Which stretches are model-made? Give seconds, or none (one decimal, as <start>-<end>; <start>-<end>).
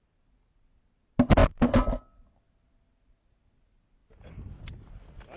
none